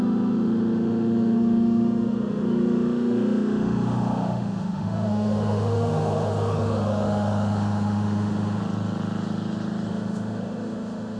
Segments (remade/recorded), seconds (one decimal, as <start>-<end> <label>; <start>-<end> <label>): 0.0-8.6 remade; 8.6-9.9 recorded; 9.9-11.2 remade